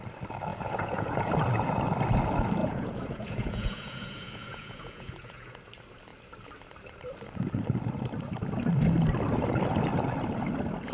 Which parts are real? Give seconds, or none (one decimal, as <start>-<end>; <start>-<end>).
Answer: 0.0-0.5; 1.3-2.6; 5.6-10.9